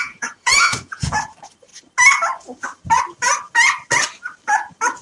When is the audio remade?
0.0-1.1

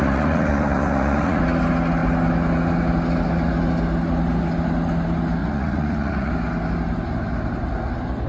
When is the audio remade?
0.0-1.4; 5.4-6.3